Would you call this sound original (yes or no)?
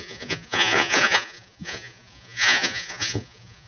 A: no